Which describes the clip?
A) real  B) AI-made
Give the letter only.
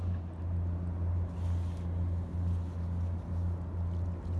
A